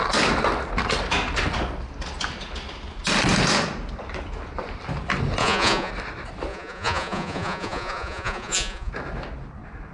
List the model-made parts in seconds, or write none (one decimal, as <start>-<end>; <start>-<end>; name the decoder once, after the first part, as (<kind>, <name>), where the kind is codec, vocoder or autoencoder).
5.4-5.9 (vocoder, Vocos); 6.5-8.9